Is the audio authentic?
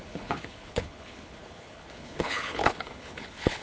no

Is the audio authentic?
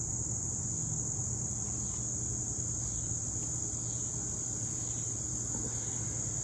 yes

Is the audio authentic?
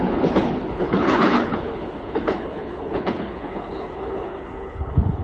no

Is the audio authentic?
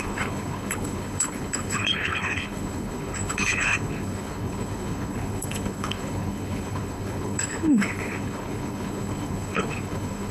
no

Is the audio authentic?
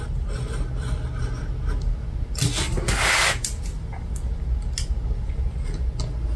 yes